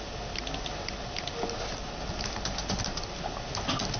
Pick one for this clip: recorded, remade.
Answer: recorded